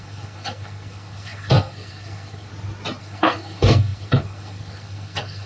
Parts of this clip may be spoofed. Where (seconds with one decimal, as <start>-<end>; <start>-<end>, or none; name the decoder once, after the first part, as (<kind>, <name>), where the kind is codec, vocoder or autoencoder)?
0.0-2.5 (codec, SNAC); 3.0-5.5

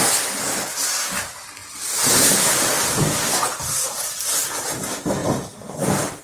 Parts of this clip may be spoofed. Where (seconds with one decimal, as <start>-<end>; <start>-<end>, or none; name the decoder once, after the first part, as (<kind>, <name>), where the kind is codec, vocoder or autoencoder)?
none

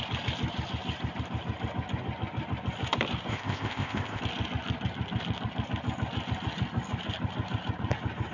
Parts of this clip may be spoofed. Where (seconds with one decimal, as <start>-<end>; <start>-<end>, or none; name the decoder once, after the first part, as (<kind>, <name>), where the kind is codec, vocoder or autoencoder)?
3.3-4.2 (codec, ZipCodec)